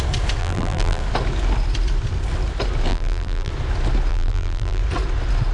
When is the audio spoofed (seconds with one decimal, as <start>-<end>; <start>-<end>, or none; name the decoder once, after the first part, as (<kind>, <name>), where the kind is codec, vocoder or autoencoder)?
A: 0.4-1.0 (vocoder, BigVGAN v2); 2.9-3.5; 4.1-4.8